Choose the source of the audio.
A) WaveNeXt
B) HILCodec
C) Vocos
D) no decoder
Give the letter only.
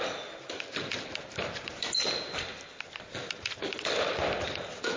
D